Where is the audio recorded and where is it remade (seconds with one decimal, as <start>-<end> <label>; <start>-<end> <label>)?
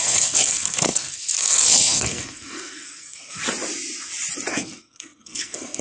0.0-3.4 remade; 3.4-4.5 recorded; 4.5-5.8 remade